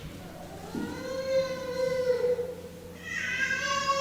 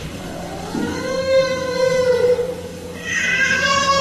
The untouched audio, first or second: first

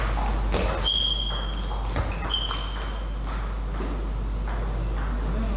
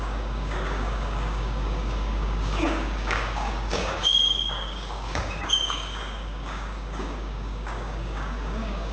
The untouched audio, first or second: first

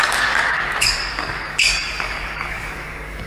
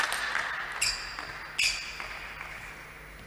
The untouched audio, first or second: second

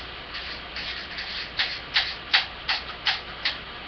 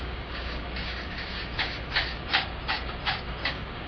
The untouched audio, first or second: first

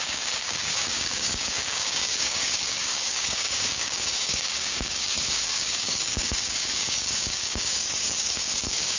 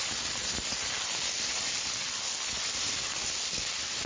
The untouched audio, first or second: second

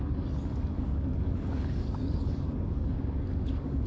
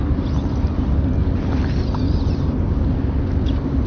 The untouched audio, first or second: second